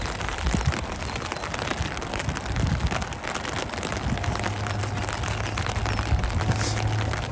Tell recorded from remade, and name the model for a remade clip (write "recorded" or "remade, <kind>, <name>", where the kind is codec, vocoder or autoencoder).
recorded